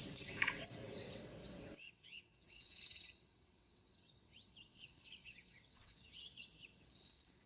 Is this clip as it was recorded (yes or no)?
no